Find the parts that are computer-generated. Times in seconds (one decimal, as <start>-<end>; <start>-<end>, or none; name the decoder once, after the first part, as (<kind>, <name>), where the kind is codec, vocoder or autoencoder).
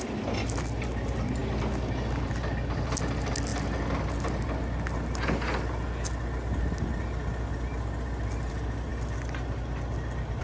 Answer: none